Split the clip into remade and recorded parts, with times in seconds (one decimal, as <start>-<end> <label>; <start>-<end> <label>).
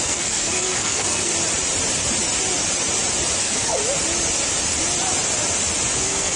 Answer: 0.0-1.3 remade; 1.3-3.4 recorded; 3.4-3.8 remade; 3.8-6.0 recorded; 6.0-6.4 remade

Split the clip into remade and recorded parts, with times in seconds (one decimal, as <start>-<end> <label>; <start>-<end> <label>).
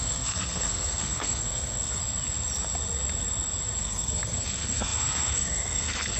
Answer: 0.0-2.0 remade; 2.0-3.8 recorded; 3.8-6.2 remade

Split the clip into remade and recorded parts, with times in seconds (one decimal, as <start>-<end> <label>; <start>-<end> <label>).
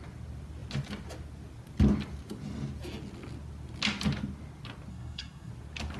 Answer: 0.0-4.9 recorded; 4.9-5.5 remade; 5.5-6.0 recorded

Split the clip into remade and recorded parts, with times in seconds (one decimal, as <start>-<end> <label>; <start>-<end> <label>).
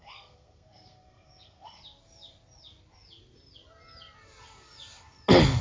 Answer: 0.0-1.8 remade; 1.8-5.6 recorded